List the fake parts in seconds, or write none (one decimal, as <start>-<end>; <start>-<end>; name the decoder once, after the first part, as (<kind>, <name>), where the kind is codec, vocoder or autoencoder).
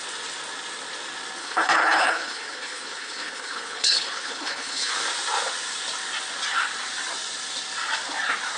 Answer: 1.4-4.9 (codec, HILCodec)